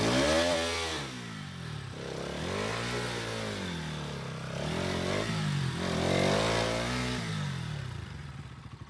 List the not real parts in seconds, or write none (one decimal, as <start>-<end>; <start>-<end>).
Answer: none